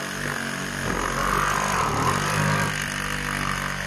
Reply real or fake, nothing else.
real